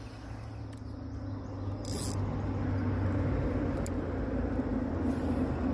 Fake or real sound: real